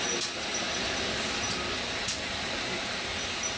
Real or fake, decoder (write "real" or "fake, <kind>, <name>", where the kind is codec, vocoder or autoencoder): real